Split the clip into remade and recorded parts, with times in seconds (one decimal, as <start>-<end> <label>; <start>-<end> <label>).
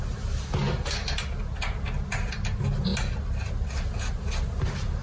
0.0-5.0 recorded